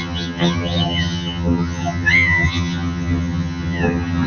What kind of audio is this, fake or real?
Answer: fake